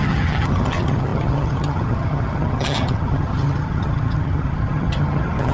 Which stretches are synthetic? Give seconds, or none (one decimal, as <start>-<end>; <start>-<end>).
0.0-5.5